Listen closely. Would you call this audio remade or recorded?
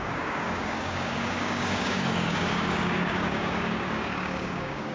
remade